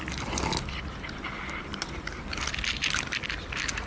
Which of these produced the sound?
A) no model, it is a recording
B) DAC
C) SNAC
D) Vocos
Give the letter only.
A